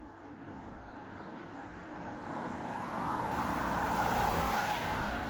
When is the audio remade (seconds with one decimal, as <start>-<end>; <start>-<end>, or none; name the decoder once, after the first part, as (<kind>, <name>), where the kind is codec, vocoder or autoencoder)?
0.0-3.4 (codec, DAC); 4.3-5.3